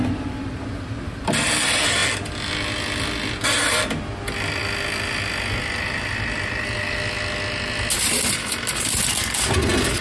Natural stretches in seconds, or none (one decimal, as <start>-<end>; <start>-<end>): 0.0-10.0